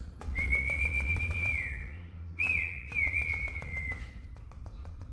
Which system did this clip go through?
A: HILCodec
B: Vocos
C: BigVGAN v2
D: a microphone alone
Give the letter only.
B